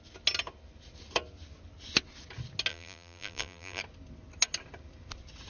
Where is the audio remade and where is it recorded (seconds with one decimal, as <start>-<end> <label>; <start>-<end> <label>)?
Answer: 0.0-2.7 recorded; 2.7-3.8 remade; 3.8-5.5 recorded